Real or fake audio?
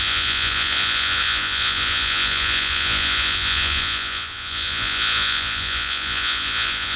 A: fake